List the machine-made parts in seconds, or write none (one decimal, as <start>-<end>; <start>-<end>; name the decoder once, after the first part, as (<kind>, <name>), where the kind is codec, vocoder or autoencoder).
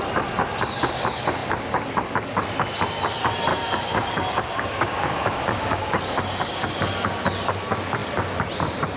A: 3.5-6.8 (codec, DAC)